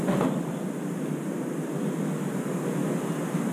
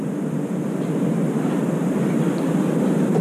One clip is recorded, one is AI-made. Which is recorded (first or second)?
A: first